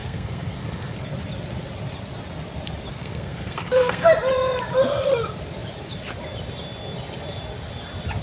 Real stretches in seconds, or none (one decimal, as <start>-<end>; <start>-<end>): 1.0-2.9; 4.1-8.2